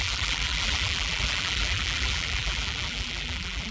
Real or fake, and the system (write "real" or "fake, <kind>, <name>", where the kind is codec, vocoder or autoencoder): fake, vocoder, BigVGAN v2